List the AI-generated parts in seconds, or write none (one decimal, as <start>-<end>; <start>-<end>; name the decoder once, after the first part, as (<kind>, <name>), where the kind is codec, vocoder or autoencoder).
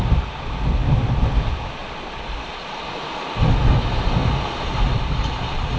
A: none